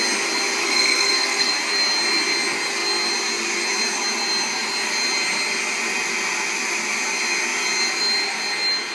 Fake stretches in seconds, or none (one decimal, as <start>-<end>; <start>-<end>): 0.6-1.5